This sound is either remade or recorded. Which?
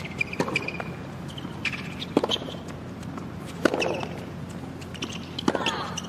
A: recorded